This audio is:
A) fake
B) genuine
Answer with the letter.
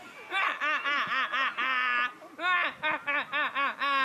B